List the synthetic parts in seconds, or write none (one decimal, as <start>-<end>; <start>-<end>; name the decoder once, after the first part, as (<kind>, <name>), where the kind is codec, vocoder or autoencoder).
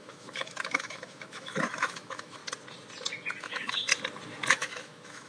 0.0-2.4 (autoencoder, DAC-VAE); 3.4-3.9; 4.5-5.3